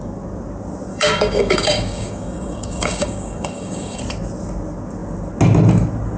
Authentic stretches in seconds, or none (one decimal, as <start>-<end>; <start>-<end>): 0.0-0.9; 4.0-6.2